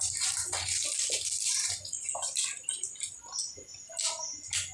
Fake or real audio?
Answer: real